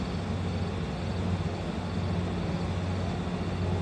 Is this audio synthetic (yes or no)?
no